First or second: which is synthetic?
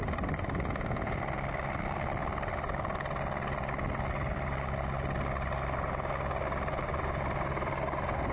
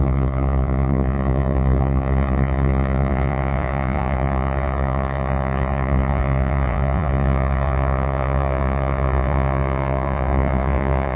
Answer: second